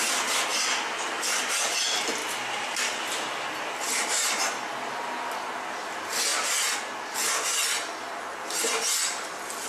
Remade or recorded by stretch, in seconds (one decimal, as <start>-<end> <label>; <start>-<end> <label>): 0.0-9.7 recorded